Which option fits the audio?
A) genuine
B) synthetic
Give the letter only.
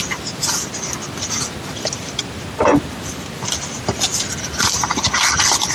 A